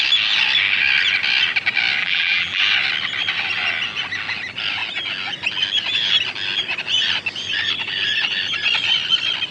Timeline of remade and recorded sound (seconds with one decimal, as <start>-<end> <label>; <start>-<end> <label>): 0.0-2.0 recorded; 2.0-2.6 remade; 2.6-9.5 recorded